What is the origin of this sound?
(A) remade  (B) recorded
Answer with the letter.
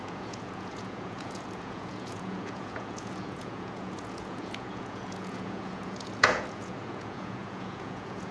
A